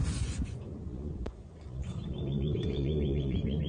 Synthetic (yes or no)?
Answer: yes